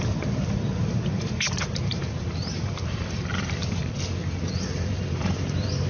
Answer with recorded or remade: remade